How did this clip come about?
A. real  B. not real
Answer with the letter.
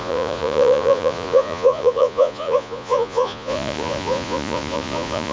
B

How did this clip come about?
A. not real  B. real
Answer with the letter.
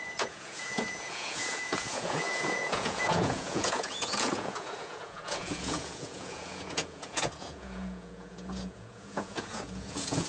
A